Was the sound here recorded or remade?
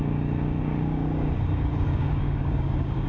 remade